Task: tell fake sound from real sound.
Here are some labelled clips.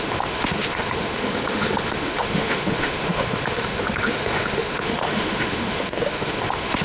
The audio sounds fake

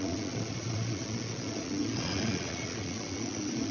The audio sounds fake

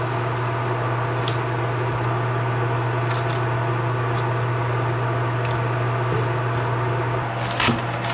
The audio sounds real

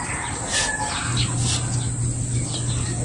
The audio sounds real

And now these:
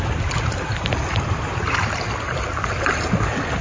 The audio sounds real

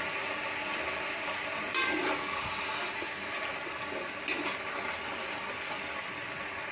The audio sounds real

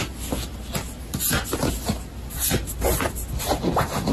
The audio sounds real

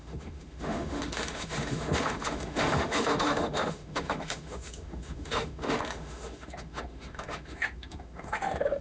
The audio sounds fake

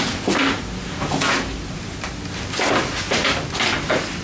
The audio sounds real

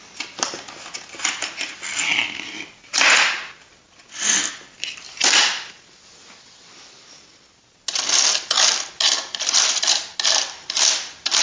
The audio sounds real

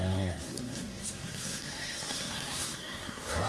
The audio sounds fake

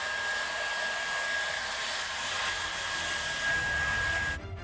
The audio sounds real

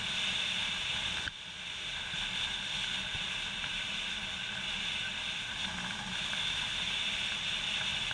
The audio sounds real